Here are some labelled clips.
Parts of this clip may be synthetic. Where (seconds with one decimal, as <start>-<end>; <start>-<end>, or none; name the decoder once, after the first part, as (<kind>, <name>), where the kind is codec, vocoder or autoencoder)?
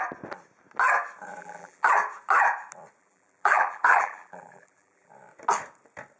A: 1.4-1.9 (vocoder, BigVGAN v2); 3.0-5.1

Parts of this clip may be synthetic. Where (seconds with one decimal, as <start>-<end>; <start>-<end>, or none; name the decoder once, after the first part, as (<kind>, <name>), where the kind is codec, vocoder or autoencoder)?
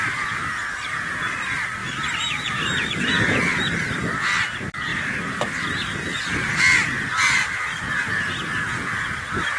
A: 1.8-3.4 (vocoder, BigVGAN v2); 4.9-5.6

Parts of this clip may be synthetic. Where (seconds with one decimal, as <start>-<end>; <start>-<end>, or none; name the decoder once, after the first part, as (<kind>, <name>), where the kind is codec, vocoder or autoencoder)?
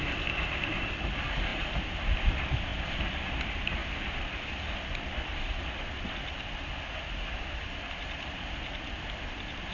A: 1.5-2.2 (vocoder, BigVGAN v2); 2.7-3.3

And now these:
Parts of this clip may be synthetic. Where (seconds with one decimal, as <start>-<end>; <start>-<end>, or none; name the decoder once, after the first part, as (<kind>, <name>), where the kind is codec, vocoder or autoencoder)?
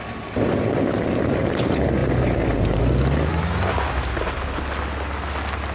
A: 2.0-2.8 (vocoder, BigVGAN v2)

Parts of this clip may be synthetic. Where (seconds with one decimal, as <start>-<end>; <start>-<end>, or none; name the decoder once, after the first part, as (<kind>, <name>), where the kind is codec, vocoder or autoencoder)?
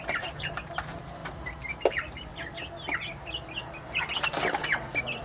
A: 0.0-1.2 (vocoder, BigVGAN v2); 1.9-2.3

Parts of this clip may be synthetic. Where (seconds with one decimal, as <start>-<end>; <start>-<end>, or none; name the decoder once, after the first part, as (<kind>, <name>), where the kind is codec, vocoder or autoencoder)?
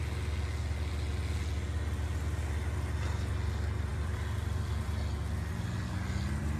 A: 3.9-5.1 (vocoder, BigVGAN v2)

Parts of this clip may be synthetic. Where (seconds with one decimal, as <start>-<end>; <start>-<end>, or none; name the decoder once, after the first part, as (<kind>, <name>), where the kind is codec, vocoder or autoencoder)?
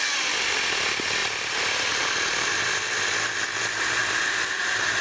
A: none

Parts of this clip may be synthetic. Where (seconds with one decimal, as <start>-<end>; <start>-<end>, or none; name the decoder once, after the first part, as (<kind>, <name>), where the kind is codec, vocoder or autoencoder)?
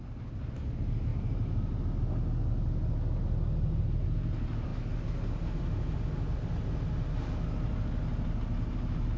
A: none